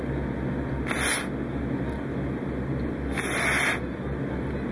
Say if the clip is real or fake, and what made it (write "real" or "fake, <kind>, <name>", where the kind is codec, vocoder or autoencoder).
real